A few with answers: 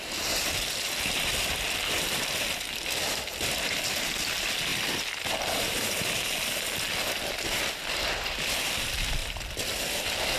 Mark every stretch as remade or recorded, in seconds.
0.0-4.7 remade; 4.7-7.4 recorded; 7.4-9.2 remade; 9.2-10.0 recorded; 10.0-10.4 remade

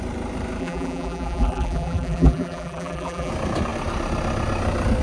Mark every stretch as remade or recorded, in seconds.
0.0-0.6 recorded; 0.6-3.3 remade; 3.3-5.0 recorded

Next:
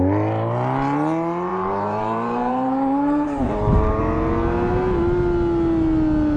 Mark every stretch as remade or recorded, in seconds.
0.0-1.5 recorded; 1.5-4.0 remade; 4.0-6.4 recorded

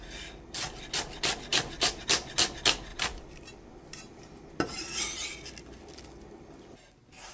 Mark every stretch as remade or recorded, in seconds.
0.0-1.5 recorded; 1.5-2.0 remade; 2.0-2.9 recorded; 2.9-6.0 remade; 6.0-7.3 recorded